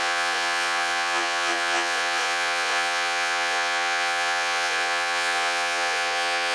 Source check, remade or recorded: remade